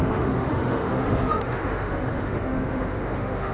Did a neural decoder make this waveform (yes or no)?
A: yes